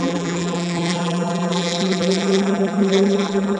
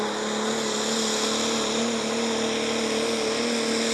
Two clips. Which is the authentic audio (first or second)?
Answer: second